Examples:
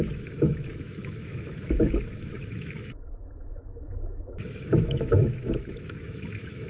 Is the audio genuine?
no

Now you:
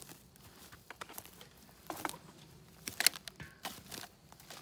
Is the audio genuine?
yes